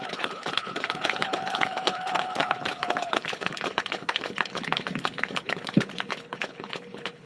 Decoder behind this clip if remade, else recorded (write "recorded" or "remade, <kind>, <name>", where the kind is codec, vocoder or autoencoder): remade, codec, HILCodec